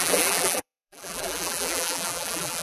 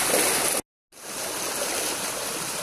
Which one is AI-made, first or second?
first